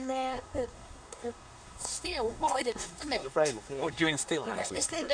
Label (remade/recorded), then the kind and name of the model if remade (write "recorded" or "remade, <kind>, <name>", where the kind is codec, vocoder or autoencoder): remade, codec, SNAC